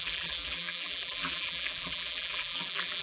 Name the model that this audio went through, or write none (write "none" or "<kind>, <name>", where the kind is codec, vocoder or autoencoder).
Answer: vocoder, BigVGAN v2